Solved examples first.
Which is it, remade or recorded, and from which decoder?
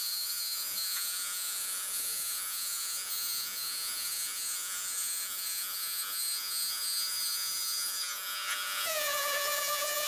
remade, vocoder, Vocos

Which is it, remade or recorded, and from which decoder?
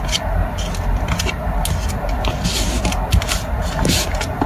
recorded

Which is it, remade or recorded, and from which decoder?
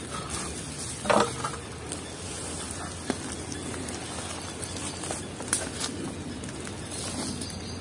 recorded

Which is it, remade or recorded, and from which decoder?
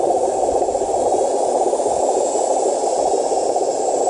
recorded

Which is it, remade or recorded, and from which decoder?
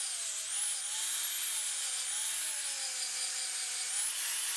recorded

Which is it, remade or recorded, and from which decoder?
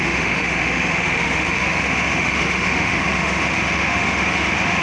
remade, autoencoder, DAC-VAE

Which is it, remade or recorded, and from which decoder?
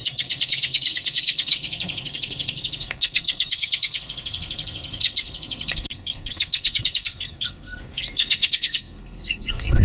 remade, codec, SNAC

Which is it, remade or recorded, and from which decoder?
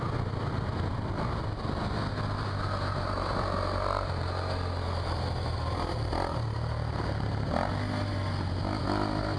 recorded